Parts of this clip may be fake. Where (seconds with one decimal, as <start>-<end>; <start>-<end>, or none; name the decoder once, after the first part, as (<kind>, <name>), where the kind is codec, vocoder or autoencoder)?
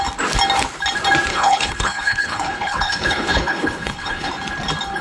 1.3-4.3 (codec, HILCodec)